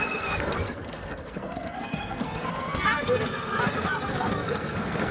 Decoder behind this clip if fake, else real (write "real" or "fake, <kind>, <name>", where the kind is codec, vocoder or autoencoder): fake, codec, SNAC